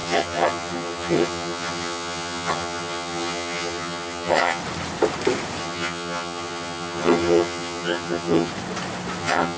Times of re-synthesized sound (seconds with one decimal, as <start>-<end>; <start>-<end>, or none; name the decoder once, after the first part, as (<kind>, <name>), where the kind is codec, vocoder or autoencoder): 0.0-4.6 (vocoder, HiFi-GAN); 5.6-8.5; 9.2-9.6